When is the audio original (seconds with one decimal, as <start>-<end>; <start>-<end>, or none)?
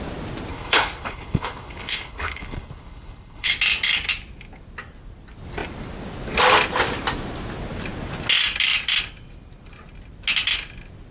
0.0-0.5; 3.5-11.1